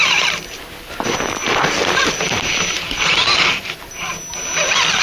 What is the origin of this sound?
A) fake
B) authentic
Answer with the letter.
B